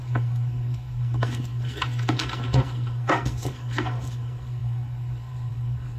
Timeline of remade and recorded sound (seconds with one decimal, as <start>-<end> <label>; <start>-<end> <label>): 0.0-6.0 remade